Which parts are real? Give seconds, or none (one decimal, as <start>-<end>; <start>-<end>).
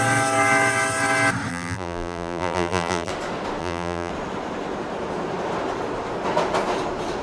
0.0-1.5; 3.1-3.6; 4.1-7.2